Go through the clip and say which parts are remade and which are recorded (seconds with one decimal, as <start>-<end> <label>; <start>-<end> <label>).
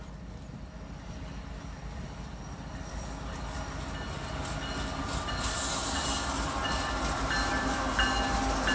0.0-8.7 recorded